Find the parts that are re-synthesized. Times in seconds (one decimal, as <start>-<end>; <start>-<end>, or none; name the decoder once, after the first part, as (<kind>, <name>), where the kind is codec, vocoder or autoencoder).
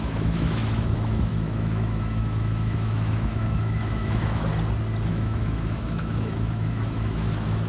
0.0-4.5 (autoencoder, DAC-VAE); 5.1-7.7